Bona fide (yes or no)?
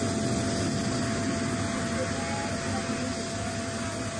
yes